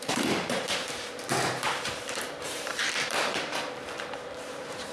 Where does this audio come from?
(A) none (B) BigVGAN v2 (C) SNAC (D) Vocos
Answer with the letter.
B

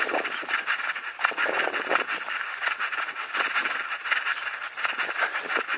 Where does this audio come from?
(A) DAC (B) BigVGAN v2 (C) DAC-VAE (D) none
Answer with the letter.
B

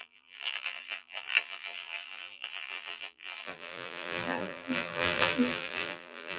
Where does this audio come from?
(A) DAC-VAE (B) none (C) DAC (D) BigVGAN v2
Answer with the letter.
D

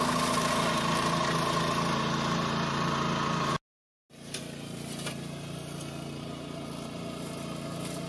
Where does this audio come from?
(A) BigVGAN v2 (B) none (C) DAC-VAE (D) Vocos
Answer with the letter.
B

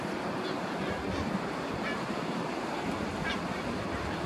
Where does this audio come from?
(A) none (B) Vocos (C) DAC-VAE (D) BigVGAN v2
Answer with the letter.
A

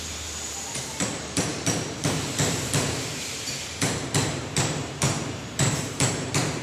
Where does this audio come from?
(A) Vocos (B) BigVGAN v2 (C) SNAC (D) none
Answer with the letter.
B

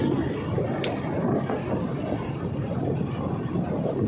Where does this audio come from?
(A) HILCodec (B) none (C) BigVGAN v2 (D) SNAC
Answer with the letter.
B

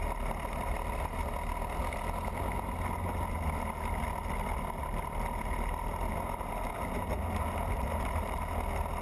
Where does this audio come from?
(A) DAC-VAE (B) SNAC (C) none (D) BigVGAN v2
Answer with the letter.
C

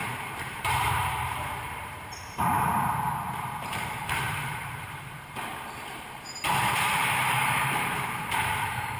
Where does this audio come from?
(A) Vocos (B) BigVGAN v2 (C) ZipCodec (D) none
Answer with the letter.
B